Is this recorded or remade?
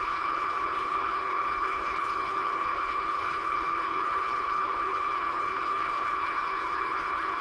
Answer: remade